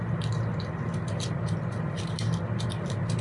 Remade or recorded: recorded